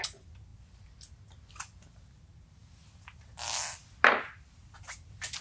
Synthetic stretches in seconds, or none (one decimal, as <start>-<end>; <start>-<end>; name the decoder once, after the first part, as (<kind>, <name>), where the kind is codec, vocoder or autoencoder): none